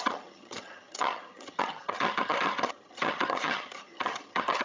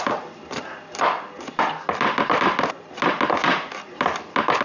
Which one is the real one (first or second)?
second